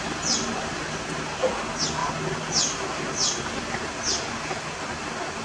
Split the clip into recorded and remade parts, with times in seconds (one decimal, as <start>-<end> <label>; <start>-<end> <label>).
0.0-5.4 recorded